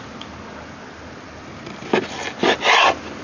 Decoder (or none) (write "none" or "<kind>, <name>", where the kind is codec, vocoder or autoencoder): none